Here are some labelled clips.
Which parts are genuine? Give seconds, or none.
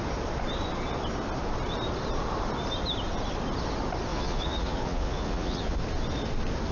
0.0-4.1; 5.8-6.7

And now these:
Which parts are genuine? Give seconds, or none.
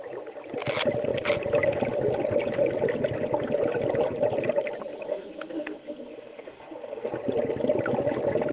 0.0-5.1; 7.1-8.5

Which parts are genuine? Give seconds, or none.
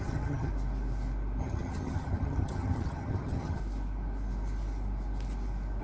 0.5-1.4; 3.6-5.8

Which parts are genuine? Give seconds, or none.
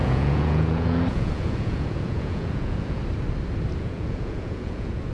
3.0-3.8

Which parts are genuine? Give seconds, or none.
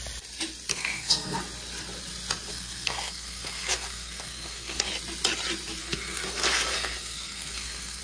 0.0-0.7; 1.4-2.5; 4.9-5.8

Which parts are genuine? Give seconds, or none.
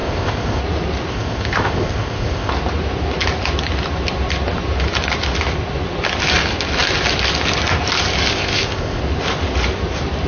0.6-1.1; 2.5-8.3; 9.0-10.3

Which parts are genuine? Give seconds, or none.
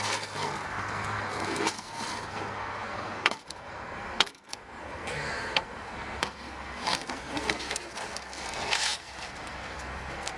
none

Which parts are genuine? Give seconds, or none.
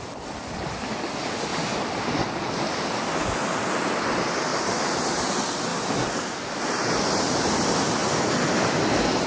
0.0-4.5; 5.3-9.3